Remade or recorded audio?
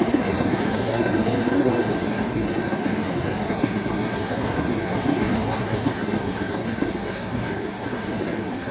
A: remade